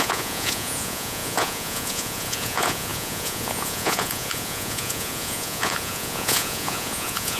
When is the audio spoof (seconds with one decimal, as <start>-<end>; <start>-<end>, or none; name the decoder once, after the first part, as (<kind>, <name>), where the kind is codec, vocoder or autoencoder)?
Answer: 0.0-7.4 (vocoder, Vocos)